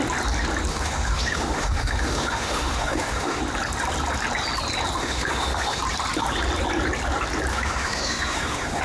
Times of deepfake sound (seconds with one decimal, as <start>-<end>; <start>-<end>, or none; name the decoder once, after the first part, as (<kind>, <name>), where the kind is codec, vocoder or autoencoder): 0.7-3.4 (autoencoder, DAC-VAE); 5.0-5.8; 7.5-8.8